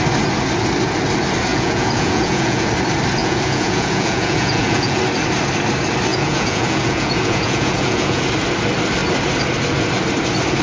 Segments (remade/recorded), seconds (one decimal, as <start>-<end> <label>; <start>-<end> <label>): 0.0-1.5 recorded; 1.5-2.7 remade; 2.7-3.2 recorded; 3.2-5.0 remade; 5.0-6.1 recorded; 6.1-8.2 remade; 8.2-10.6 recorded